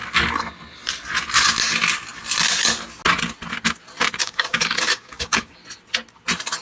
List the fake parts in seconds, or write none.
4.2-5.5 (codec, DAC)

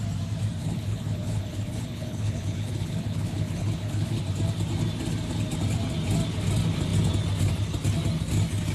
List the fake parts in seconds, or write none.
0.6-4.2 (codec, HILCodec)

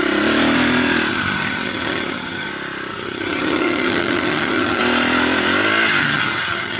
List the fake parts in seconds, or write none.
1.1-2.5 (vocoder, HiFi-GAN); 2.9-4.8; 6.0-6.8

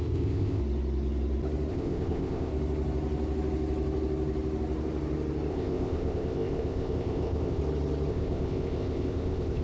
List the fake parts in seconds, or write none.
0.0-0.6 (codec, ZipCodec); 1.7-2.5; 5.5-7.6; 8.1-9.6

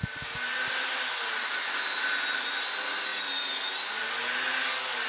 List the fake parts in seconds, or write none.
none

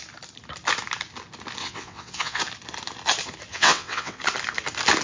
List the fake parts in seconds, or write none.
1.6-2.4 (vocoder, WaveNeXt); 3.5-4.2

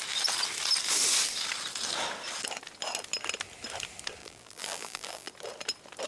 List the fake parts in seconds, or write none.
4.2-5.3 (vocoder, BigVGAN v2)

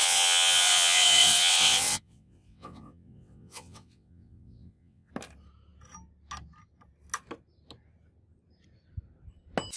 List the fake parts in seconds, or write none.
0.0-5.1 (vocoder, WaveNeXt)